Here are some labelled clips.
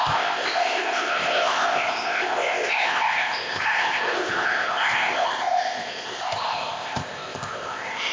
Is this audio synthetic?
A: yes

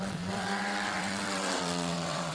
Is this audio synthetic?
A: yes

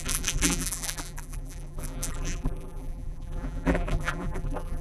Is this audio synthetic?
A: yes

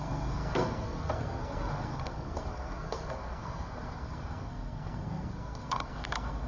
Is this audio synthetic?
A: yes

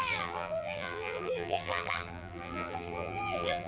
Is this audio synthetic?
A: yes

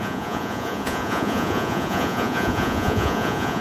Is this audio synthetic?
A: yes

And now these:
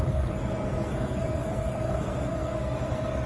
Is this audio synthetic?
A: yes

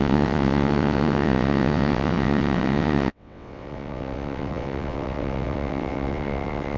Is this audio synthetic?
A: yes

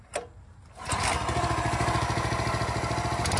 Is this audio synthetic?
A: no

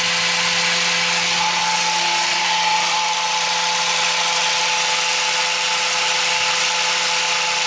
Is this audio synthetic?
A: no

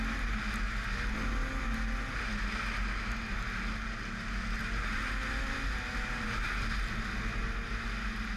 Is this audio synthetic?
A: no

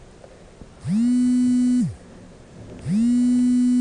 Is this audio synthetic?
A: no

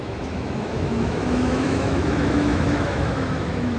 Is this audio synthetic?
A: yes